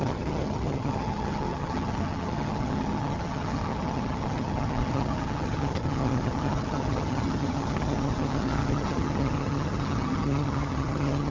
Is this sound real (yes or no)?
no